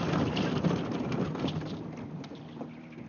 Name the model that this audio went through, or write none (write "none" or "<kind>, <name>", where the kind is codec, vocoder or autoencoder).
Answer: vocoder, BigVGAN v2